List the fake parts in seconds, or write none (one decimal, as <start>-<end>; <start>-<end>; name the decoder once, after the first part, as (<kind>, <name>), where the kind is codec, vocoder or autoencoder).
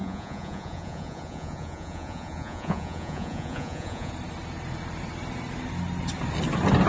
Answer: 0.0-4.1 (vocoder, Vocos)